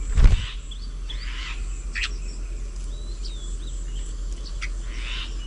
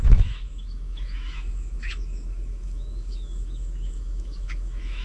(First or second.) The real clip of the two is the first